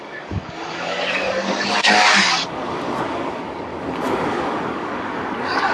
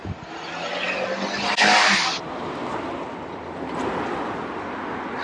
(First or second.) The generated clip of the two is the first